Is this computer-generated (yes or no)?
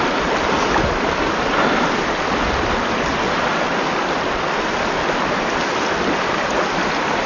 no